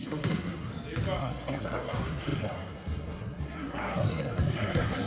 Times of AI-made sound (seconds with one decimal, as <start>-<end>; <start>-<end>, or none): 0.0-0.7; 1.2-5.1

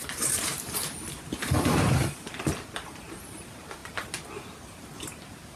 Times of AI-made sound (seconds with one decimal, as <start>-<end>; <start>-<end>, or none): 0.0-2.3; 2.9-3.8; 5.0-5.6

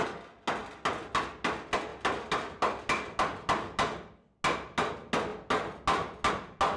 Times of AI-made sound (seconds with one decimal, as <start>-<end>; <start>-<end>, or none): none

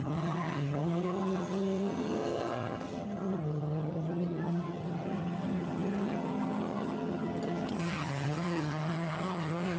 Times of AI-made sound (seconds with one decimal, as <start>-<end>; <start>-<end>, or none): 0.0-9.8

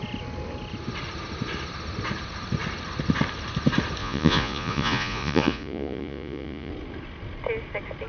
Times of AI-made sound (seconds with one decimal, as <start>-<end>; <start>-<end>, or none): 4.0-6.7